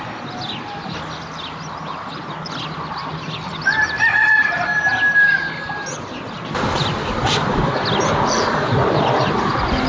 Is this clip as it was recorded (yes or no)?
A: yes